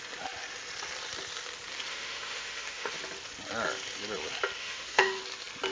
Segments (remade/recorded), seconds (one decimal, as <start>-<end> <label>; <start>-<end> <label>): 0.0-1.9 recorded; 1.9-2.9 remade; 2.9-4.6 recorded; 4.6-5.2 remade; 5.2-5.7 recorded